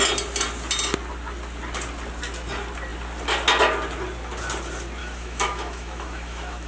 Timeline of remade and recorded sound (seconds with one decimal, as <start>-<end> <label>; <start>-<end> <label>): 0.0-5.0 recorded; 5.0-6.7 remade